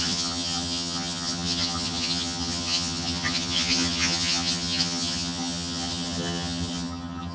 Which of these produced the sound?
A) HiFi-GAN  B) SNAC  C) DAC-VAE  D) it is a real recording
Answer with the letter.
A